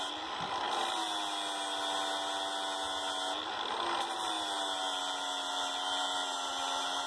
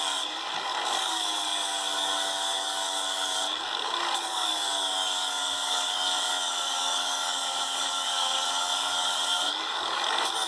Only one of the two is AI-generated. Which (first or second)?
second